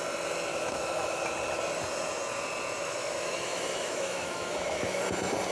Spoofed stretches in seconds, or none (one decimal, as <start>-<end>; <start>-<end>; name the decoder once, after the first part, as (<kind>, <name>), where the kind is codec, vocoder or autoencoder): 0.5-1.2 (autoencoder, DAC-VAE); 2.8-5.0

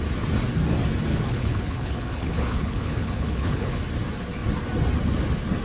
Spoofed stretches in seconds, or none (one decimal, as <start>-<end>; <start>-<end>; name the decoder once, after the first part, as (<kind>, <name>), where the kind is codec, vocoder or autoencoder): 1.1-3.8 (codec, HILCodec)

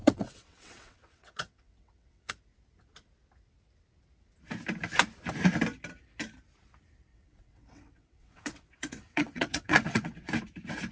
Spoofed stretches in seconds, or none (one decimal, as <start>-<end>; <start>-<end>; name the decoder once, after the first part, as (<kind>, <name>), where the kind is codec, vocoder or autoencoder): 0.0-2.3 (vocoder, WaveNeXt); 7.1-10.3

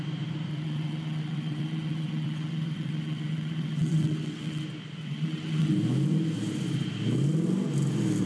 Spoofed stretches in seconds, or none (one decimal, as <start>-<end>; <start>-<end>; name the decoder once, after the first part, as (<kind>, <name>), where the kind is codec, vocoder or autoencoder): 0.5-4.6 (vocoder, WaveNeXt); 5.0-5.7

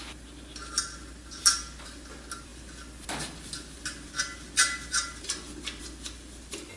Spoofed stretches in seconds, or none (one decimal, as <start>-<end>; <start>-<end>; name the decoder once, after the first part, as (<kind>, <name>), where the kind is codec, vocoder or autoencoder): none